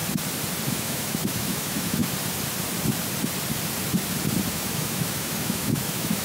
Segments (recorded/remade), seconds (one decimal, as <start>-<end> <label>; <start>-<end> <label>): 0.0-0.7 recorded; 0.7-2.0 remade; 2.0-4.5 recorded; 4.5-6.2 remade